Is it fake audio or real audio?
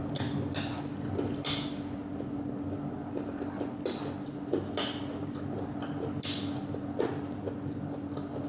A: real